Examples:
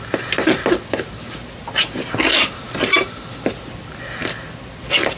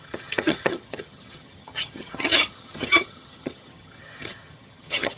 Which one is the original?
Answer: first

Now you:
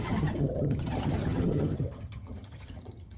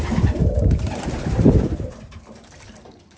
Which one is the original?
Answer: second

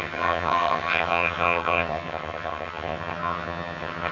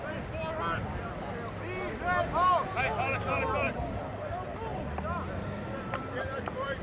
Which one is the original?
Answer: second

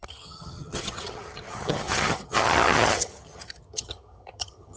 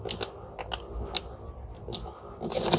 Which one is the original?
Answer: second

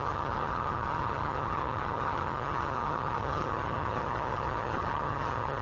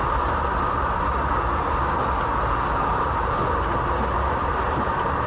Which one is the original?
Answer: second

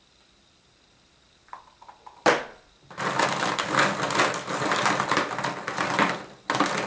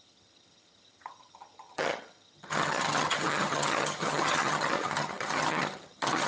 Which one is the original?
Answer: first